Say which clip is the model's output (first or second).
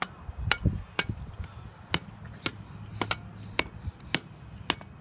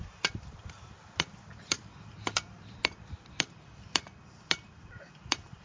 second